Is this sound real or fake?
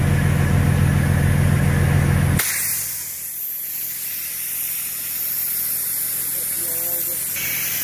real